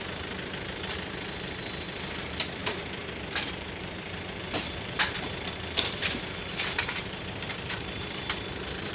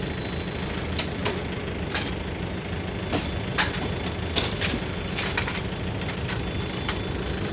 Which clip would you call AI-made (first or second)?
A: first